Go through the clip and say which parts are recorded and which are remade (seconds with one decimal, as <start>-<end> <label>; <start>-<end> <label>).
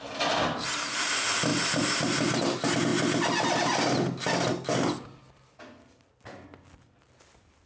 0.0-7.7 recorded